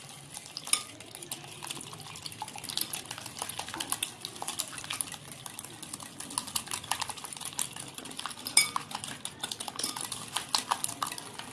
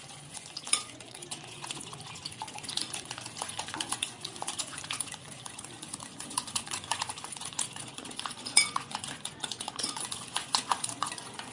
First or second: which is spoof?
second